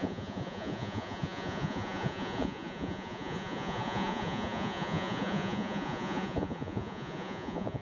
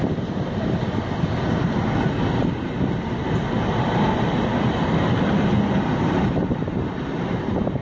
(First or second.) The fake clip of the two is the first